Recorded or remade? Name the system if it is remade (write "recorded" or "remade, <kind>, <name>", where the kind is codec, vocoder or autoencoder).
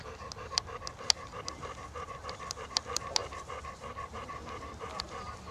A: recorded